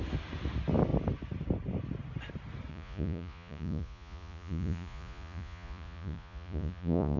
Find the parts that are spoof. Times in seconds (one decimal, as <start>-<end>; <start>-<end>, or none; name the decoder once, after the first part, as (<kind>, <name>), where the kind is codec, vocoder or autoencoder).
2.7-7.2 (vocoder, Vocos)